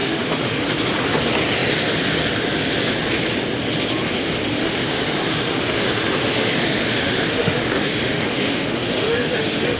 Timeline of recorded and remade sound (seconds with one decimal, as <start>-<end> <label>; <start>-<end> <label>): 0.0-0.6 remade; 0.6-4.4 recorded; 4.4-9.8 remade